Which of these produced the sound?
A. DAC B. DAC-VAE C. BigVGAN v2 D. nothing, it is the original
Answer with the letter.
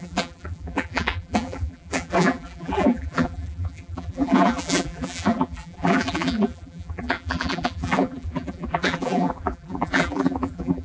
C